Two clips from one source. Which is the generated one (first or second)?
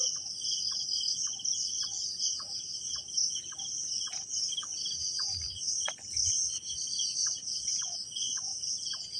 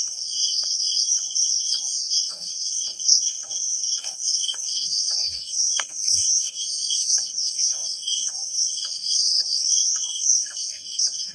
second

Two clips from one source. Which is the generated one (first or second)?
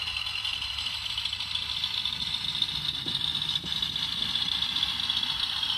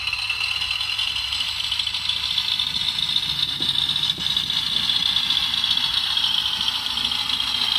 first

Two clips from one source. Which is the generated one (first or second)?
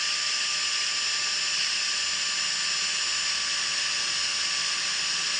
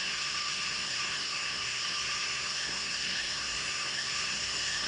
second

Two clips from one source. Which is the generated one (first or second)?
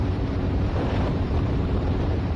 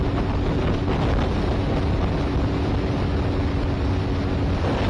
first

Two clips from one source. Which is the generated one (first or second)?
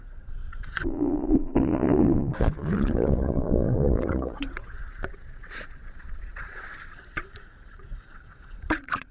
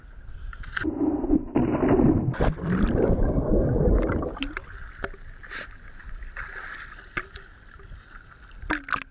first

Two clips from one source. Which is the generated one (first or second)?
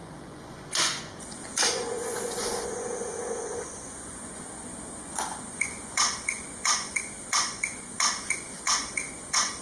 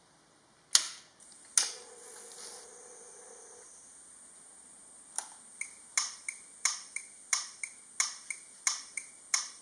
first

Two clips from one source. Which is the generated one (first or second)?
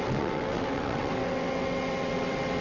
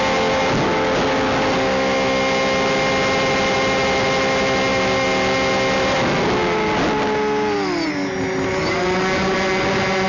first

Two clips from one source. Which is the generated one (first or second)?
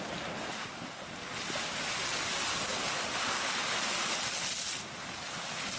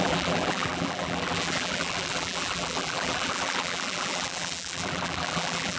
second